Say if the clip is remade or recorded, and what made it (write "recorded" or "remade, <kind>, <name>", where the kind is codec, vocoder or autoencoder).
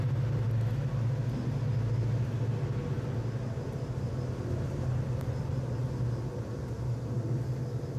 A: recorded